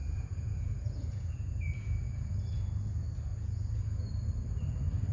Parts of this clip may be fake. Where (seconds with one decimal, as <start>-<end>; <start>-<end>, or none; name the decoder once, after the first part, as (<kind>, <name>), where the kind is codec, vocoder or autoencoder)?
0.0-2.7 (vocoder, Vocos); 3.3-4.1